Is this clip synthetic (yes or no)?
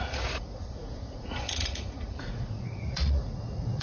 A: yes